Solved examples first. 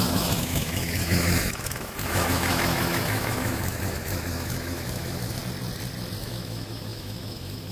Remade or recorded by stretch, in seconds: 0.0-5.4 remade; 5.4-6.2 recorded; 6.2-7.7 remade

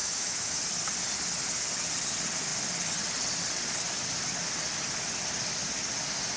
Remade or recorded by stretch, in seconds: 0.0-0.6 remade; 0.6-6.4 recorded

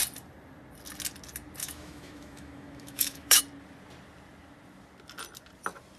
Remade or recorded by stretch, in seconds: 0.0-1.6 recorded; 1.6-3.4 remade; 3.4-6.0 recorded

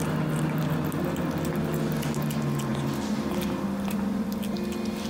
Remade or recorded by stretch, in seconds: 0.0-5.1 recorded

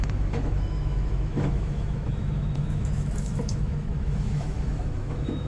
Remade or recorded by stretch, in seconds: 0.0-5.5 remade